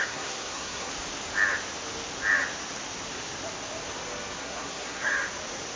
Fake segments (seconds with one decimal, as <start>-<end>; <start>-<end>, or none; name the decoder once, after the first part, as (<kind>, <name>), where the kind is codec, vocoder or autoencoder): 0.0-0.9 (codec, SNAC); 4.4-5.1

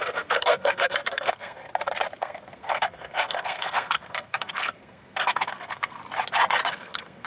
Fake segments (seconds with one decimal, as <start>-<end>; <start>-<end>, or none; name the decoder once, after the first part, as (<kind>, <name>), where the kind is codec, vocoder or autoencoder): 0.0-1.6 (codec, SNAC); 2.2-6.0; 6.7-7.3

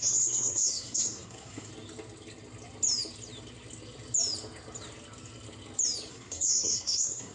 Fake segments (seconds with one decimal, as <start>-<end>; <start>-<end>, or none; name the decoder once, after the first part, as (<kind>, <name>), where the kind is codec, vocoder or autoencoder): 0.0-1.7 (codec, SNAC); 6.1-7.3

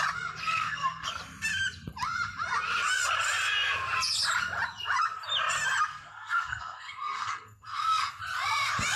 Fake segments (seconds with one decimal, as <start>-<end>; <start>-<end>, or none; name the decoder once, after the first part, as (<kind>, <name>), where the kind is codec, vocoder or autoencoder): 0.4-1.2 (codec, SNAC); 5.9-8.2

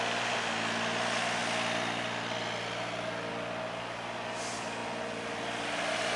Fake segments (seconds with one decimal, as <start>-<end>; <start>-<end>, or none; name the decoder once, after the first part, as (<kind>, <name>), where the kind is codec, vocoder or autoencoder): none

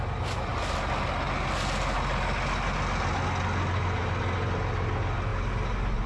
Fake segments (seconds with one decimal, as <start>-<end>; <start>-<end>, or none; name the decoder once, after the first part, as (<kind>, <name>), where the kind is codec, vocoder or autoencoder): none